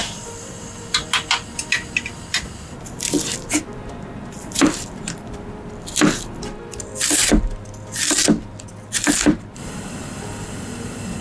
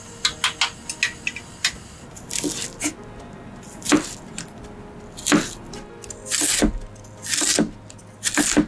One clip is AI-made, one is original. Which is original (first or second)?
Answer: second